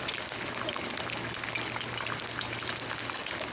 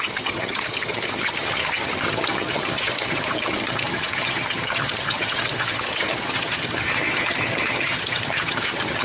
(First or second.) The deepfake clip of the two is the second